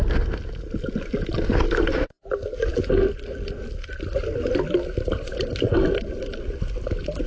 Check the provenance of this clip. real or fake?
real